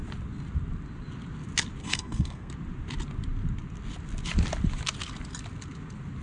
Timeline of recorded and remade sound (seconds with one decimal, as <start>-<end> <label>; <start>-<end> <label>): 0.0-1.8 recorded; 1.8-2.5 remade; 2.5-6.2 recorded

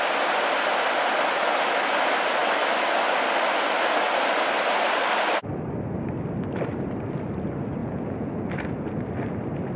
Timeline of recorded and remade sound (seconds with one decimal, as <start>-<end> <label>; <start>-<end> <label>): 0.0-7.8 recorded; 7.8-8.3 remade; 8.3-9.8 recorded